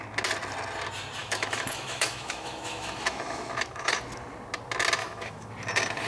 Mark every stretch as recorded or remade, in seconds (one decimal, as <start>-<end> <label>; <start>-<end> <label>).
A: 0.0-1.2 recorded; 1.2-4.0 remade; 4.0-5.0 recorded; 5.0-5.5 remade; 5.5-6.1 recorded